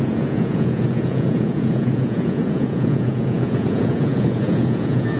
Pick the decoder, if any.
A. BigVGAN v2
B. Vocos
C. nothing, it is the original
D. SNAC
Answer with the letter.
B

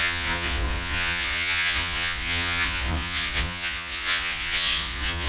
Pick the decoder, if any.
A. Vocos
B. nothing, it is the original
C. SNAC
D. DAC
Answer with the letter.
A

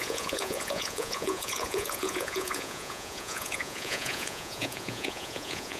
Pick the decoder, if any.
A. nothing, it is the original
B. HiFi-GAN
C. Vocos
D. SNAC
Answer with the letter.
C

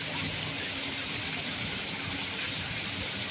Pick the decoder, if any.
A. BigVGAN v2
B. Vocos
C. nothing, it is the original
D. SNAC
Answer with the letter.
C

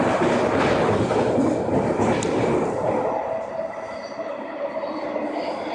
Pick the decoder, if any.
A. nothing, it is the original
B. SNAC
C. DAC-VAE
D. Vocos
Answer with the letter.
A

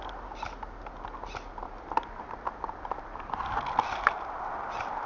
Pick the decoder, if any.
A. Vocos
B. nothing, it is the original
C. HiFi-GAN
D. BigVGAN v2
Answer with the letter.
B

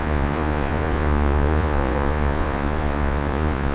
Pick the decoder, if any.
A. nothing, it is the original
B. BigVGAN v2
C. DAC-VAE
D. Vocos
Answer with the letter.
D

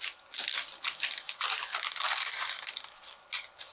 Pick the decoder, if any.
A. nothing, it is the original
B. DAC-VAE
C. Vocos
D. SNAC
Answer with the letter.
A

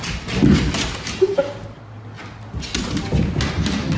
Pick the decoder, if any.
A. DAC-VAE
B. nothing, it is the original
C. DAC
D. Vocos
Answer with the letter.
B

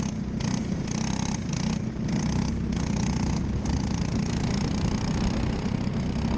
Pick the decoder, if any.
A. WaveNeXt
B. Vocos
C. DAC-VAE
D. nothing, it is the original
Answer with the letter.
D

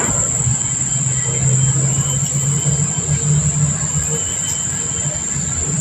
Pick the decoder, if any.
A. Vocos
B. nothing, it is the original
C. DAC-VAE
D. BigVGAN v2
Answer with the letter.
B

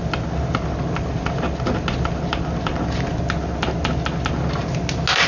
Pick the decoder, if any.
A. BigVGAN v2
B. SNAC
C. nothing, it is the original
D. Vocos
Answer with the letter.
C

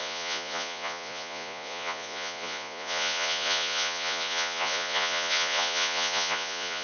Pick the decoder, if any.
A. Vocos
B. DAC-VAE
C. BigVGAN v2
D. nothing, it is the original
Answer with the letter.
A